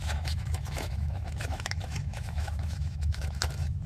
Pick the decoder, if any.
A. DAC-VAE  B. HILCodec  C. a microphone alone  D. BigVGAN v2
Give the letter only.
A